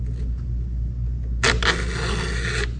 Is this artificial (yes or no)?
no